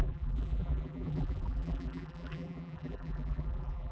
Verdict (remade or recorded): remade